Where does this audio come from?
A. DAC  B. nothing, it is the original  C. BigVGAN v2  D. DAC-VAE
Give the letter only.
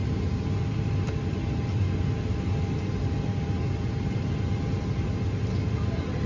B